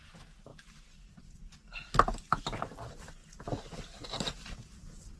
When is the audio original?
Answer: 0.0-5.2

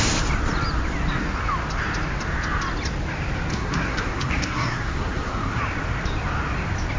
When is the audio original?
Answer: 0.0-3.5; 5.6-7.0

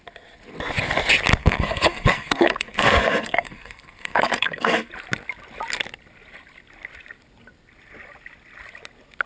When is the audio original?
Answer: 0.0-1.4; 4.9-9.3

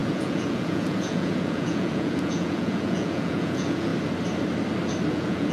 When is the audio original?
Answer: 3.9-5.1

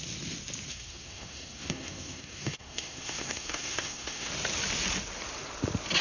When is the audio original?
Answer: 0.0-0.7; 4.3-6.0

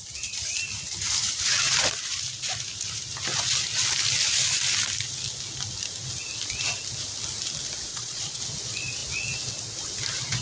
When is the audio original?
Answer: 0.0-7.9; 8.4-10.4

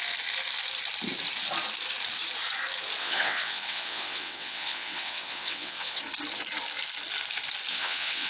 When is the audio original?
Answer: 0.0-3.0; 6.0-7.7